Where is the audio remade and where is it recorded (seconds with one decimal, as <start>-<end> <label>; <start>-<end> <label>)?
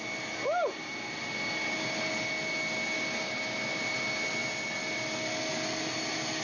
0.0-6.4 recorded